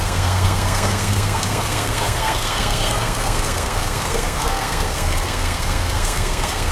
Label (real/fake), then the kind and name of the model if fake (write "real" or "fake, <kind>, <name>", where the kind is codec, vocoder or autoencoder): fake, codec, SNAC